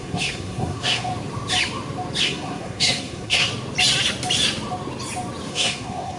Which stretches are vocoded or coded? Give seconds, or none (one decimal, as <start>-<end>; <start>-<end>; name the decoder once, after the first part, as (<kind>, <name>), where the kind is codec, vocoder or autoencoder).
0.0-1.1 (codec, SNAC); 2.2-3.5; 5.5-6.2